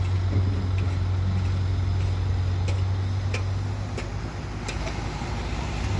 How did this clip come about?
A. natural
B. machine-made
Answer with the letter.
A